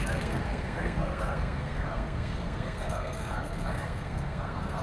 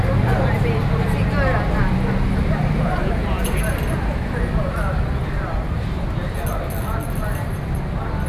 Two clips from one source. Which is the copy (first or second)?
first